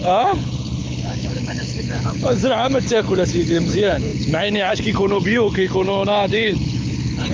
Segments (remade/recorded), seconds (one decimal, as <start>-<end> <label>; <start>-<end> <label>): 0.0-7.3 remade